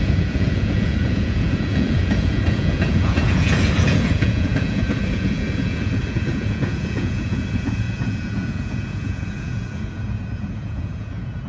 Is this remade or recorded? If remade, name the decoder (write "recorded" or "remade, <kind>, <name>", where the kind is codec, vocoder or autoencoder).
remade, vocoder, Vocos